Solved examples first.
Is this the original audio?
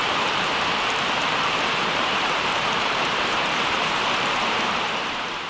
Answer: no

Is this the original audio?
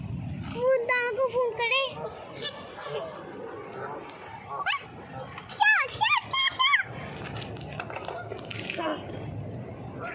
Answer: yes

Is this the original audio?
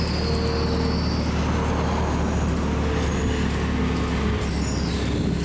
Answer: yes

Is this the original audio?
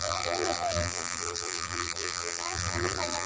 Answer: no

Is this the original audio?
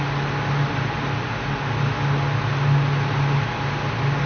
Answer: yes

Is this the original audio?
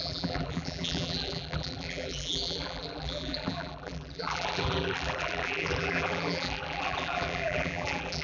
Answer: no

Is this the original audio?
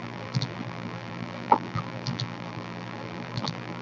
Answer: no